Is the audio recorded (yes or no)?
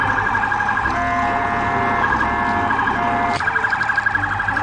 yes